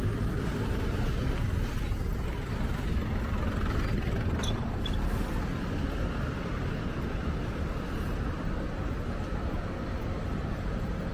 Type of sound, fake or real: real